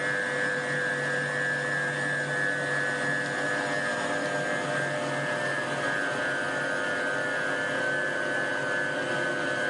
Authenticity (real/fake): real